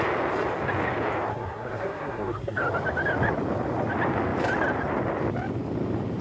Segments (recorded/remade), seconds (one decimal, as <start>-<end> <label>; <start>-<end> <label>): 0.0-1.3 recorded; 1.3-2.6 remade; 2.6-6.2 recorded